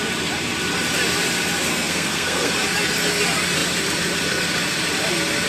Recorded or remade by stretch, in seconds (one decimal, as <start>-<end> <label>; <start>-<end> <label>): 0.0-1.7 recorded; 1.7-2.5 remade; 2.5-5.5 recorded